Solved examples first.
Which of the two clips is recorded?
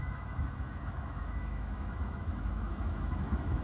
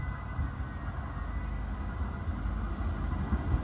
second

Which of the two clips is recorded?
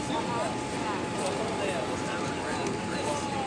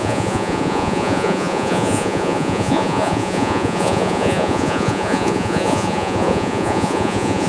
first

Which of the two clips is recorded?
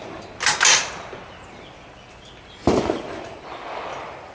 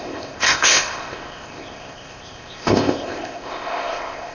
first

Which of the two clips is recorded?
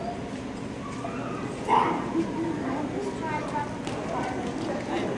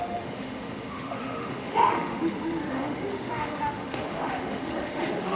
first